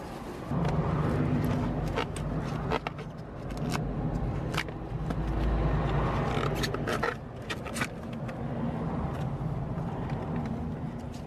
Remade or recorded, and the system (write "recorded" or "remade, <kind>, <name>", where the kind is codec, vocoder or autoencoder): recorded